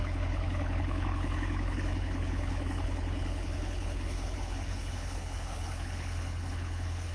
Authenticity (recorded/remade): remade